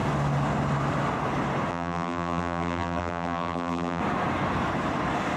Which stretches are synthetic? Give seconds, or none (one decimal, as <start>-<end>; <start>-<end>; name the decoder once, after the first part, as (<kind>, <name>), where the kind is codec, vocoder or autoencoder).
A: 1.7-4.0 (vocoder, BigVGAN v2)